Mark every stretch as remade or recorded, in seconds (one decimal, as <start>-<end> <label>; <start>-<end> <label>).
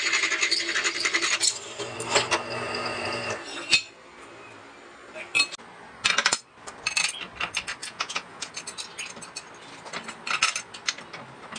0.0-7.8 recorded; 7.8-8.5 remade; 8.5-11.6 recorded